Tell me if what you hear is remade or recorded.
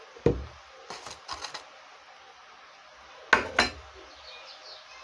recorded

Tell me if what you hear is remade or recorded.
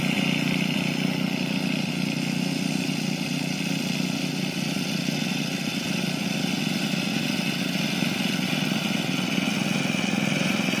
recorded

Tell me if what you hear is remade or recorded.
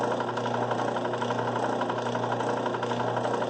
recorded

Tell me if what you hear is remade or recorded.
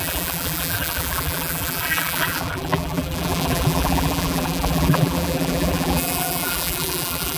remade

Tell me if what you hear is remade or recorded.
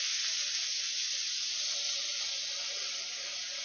recorded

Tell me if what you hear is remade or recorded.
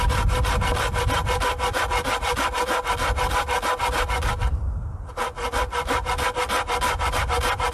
recorded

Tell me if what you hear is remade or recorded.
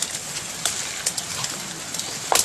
recorded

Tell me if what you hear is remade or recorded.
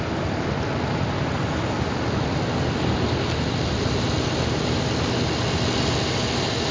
recorded